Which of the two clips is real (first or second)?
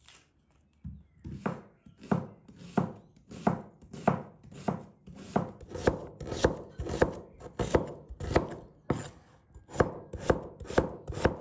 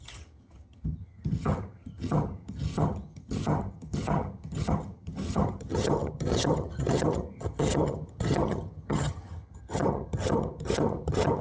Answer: first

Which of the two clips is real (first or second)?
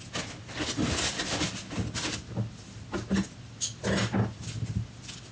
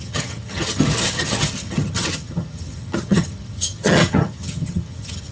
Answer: first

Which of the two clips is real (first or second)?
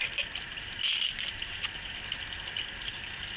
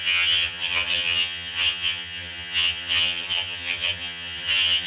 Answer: first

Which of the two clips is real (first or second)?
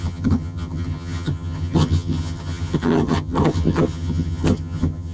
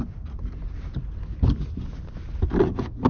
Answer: second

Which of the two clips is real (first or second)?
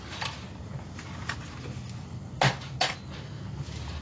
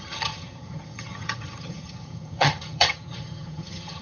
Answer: first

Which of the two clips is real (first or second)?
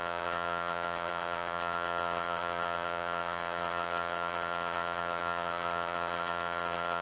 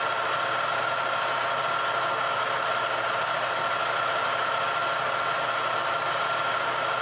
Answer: second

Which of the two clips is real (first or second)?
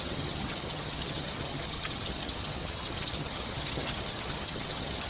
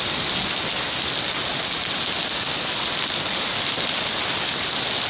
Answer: second